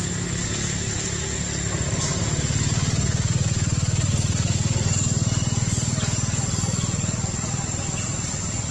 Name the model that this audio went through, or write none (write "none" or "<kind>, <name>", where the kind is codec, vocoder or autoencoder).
none